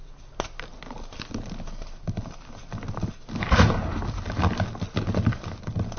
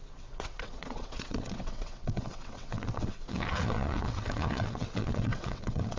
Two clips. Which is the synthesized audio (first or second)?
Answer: second